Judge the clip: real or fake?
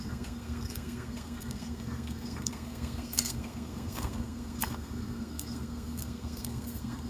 fake